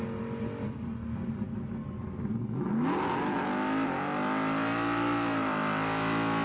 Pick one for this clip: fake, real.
real